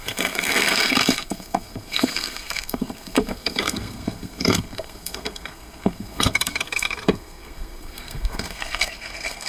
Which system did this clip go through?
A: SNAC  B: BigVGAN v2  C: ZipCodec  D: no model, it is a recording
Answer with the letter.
A